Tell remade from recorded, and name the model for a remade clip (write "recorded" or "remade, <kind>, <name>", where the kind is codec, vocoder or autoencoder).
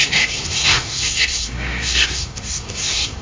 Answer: remade, codec, SNAC